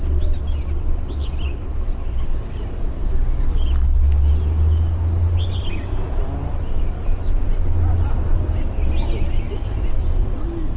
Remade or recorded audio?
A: recorded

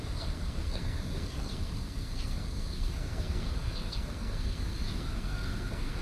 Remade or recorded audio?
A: remade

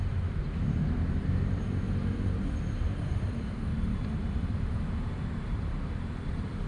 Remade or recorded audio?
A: remade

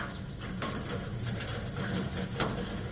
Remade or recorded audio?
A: recorded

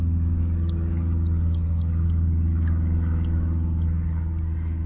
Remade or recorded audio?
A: recorded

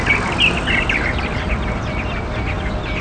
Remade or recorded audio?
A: recorded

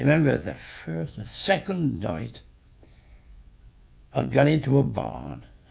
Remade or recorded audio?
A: remade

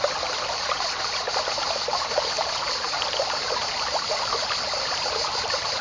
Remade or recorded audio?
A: recorded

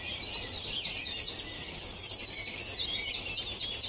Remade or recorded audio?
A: remade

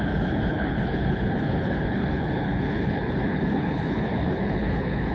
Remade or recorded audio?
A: remade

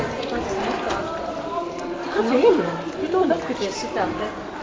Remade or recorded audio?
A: recorded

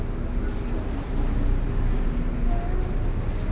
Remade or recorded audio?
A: recorded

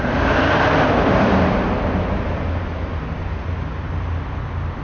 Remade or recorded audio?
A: recorded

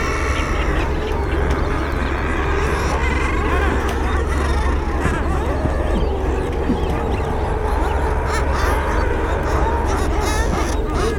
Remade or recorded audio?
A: recorded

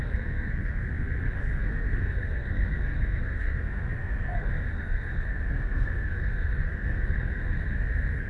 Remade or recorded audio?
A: remade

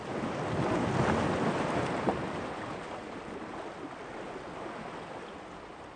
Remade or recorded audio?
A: recorded